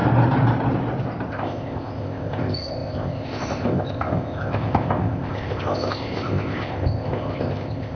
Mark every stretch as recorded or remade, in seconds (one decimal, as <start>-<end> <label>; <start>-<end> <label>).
0.0-1.3 recorded; 1.3-8.0 remade